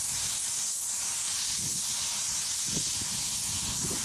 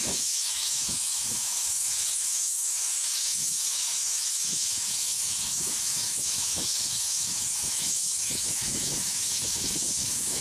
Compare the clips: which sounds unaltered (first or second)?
first